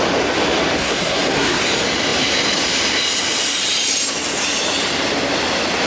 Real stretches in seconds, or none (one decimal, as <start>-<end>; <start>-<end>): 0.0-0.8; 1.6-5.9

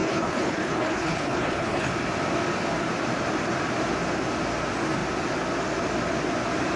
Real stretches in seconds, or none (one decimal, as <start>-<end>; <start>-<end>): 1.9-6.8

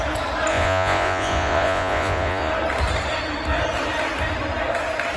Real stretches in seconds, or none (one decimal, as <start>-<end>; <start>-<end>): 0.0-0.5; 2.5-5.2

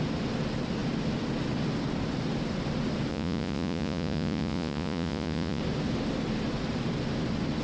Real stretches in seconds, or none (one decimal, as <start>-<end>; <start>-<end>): 0.0-3.1; 5.6-7.6

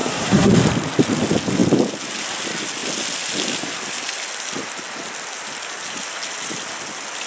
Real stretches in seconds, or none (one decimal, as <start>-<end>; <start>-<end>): 0.5-7.3

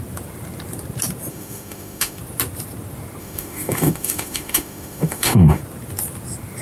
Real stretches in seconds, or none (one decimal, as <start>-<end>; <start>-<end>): 0.0-1.3; 2.2-3.2; 5.6-6.6

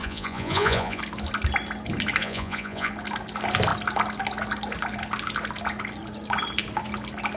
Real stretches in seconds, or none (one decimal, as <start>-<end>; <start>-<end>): 1.0-2.2; 2.9-7.4